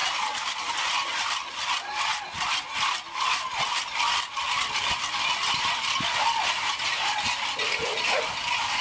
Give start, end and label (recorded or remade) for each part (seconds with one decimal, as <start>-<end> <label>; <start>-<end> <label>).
0.0-8.8 recorded